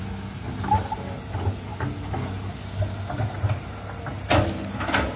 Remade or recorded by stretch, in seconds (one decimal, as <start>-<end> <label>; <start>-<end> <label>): 0.0-5.2 recorded